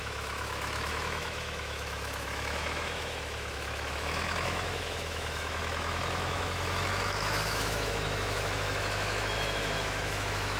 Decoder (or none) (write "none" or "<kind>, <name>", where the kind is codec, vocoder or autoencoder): autoencoder, DAC-VAE